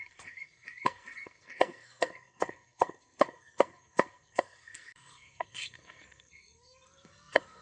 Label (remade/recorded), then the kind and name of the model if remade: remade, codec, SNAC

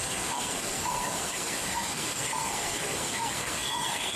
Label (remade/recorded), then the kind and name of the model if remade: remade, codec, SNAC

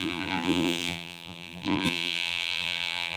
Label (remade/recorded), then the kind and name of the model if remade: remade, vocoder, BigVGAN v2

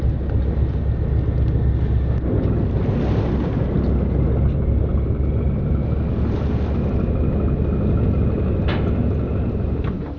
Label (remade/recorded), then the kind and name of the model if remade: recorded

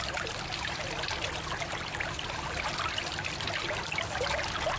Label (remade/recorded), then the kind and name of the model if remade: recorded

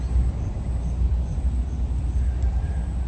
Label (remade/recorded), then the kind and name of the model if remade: recorded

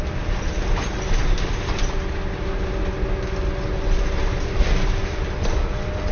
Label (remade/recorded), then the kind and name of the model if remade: recorded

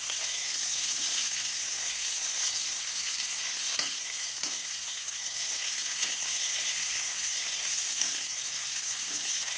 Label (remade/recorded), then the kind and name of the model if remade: remade, codec, SNAC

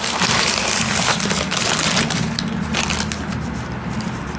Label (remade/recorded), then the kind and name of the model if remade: recorded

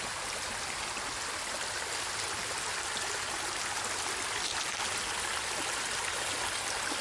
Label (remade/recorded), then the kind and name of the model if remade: recorded